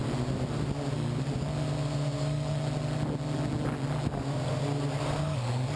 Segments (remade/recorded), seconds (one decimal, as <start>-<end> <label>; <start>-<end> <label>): 0.0-5.8 recorded

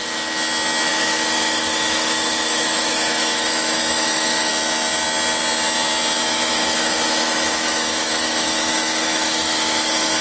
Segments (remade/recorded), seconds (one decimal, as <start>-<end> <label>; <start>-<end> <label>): 0.0-0.9 recorded; 0.9-4.5 remade; 4.5-6.2 recorded; 6.2-10.2 remade